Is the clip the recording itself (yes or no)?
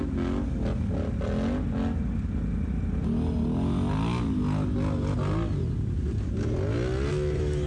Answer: yes